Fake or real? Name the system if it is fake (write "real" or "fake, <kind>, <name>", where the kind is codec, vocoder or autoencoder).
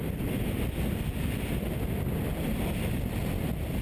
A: real